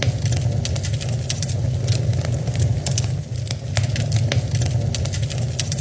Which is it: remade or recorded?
recorded